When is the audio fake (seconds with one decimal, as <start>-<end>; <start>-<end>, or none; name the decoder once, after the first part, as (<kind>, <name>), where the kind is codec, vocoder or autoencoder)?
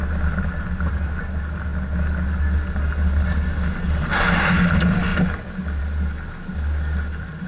none